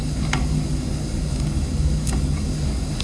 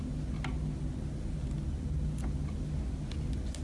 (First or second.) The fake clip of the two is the first